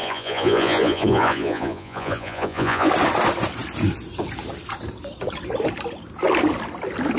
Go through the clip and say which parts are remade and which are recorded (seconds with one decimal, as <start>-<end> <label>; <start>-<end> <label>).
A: 0.0-2.9 remade; 2.9-7.2 recorded